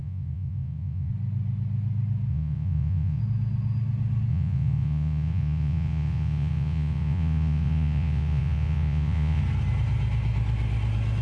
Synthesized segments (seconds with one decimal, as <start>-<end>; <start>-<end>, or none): 0.0-1.1; 2.3-3.2; 4.3-9.4